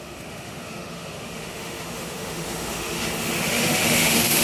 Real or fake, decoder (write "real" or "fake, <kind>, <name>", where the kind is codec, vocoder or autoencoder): fake, autoencoder, DAC-VAE